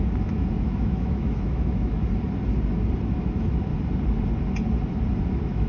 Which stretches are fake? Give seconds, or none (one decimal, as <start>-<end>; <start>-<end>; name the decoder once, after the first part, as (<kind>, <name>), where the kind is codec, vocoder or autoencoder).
0.0-2.0 (autoencoder, DAC-VAE); 3.2-3.7; 5.2-5.7